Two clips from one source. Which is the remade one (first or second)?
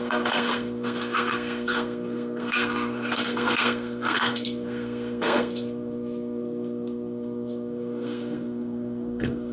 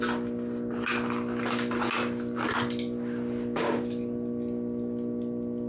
first